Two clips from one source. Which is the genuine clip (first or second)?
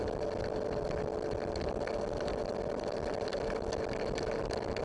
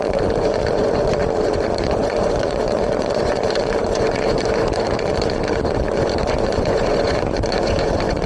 first